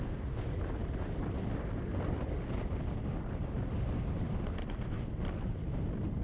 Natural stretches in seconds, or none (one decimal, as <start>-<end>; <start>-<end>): 0.0-0.8; 4.5-6.2